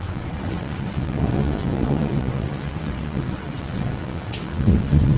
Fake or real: fake